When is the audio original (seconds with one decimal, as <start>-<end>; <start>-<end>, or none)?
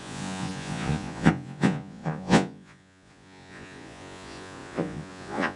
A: none